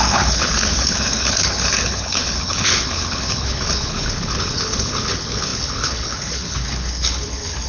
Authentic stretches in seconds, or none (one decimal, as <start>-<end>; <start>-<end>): none